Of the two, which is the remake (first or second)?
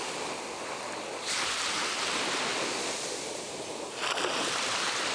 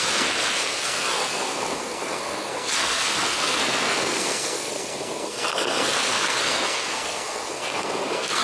second